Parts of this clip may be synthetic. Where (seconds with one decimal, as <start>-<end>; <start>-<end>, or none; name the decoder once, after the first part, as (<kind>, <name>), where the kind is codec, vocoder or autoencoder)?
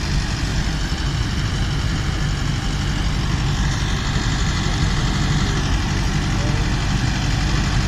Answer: 0.5-1.2 (vocoder, BigVGAN v2)